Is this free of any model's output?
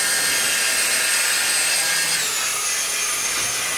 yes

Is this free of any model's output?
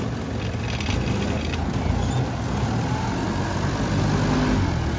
yes